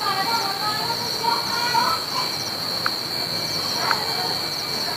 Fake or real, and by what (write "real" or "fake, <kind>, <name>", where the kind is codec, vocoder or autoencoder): real